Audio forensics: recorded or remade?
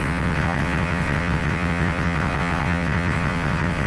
remade